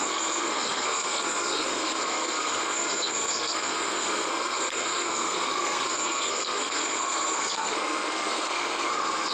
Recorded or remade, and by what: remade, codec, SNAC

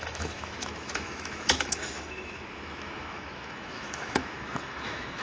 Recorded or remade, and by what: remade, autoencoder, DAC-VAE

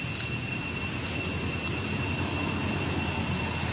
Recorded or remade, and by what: recorded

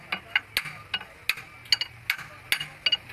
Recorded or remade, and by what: recorded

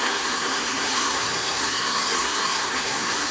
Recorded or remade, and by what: remade, codec, SNAC